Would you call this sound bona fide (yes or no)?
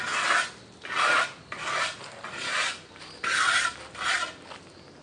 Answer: yes